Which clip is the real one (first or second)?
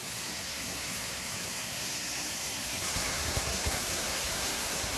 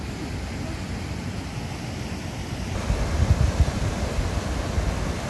second